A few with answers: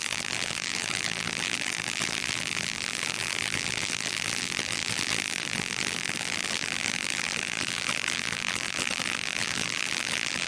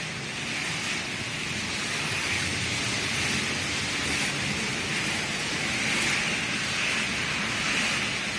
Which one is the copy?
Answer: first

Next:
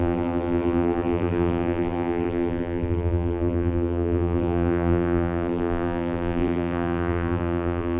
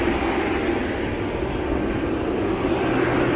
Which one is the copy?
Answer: first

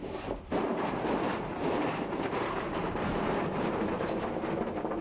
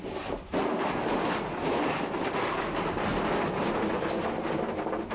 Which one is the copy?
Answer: first